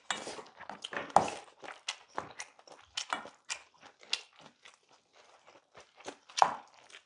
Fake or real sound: real